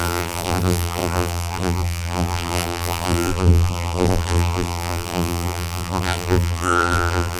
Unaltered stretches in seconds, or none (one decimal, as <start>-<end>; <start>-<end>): none